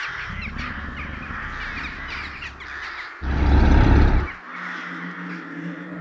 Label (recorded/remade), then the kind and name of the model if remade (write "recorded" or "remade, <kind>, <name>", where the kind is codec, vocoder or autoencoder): recorded